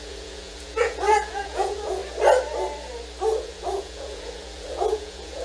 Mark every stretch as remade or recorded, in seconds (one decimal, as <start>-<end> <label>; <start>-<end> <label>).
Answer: 0.0-2.0 remade; 2.0-3.4 recorded; 3.4-5.4 remade